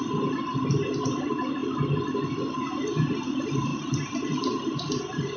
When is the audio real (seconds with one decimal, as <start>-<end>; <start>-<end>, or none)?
0.0-3.7; 5.0-5.4